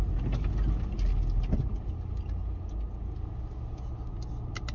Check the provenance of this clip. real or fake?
real